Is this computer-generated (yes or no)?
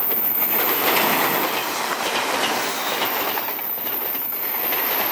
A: yes